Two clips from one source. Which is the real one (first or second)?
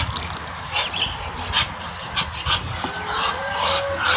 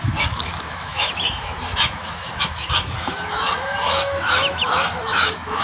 first